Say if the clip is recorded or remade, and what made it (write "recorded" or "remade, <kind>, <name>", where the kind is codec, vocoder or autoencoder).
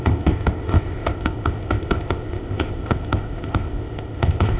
remade, codec, ZipCodec